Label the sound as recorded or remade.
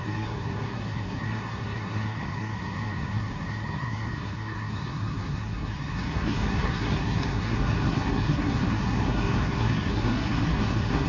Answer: remade